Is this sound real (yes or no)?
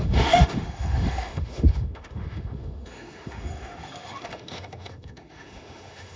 no